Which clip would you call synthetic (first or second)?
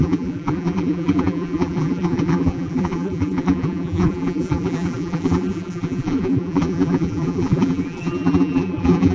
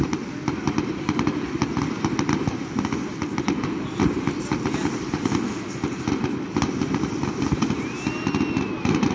first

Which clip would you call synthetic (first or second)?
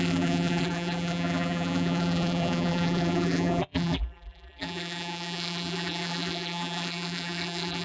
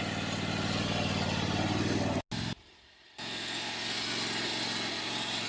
first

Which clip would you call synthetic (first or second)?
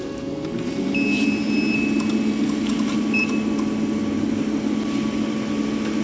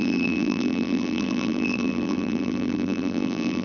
second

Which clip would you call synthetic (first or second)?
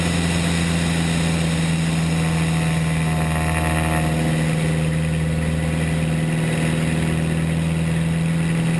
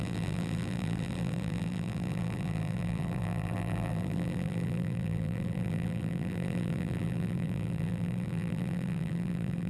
second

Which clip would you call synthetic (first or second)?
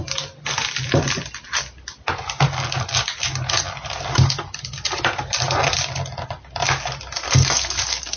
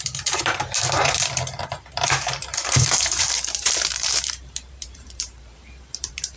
second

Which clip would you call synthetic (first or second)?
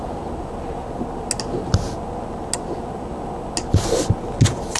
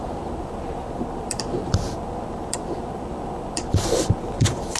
second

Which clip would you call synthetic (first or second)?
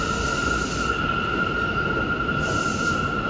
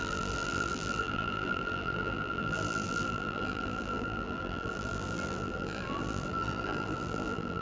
second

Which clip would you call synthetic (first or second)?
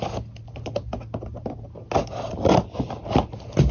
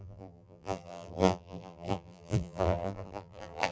second